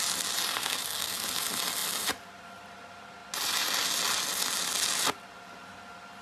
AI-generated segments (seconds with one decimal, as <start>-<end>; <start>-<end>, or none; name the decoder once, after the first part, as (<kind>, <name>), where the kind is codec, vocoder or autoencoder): 0.6-1.2 (codec, SNAC)

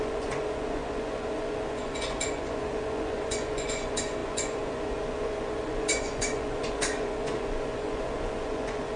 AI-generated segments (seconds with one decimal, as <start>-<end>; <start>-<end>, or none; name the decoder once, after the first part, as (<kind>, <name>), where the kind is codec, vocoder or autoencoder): 0.0-9.0 (vocoder, Vocos)

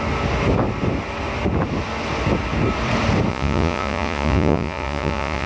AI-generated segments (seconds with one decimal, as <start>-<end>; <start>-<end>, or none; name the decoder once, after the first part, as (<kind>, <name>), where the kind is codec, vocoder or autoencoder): 3.3-5.5 (vocoder, Vocos)